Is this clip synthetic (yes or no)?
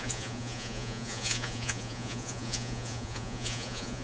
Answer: yes